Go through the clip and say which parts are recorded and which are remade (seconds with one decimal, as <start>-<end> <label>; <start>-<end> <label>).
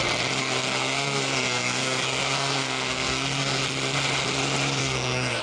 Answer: 0.0-0.4 recorded; 0.4-3.6 remade; 3.6-4.8 recorded; 4.8-5.4 remade